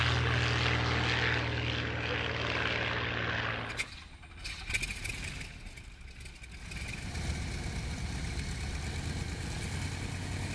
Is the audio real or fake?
real